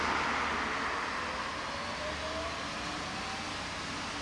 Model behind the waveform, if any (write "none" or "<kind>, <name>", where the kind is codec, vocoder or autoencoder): none